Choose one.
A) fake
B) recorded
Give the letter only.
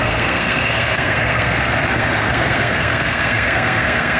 A